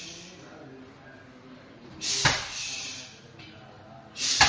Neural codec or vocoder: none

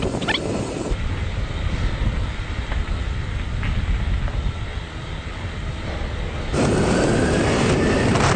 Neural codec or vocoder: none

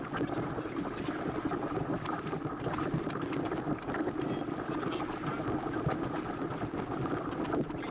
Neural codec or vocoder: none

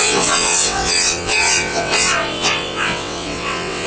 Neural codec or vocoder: vocoder, WaveNeXt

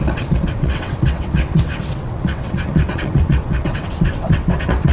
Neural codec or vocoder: vocoder, WaveNeXt